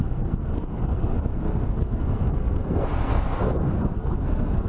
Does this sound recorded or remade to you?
remade